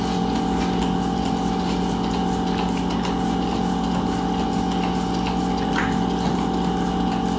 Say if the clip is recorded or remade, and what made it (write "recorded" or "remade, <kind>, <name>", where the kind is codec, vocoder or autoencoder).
recorded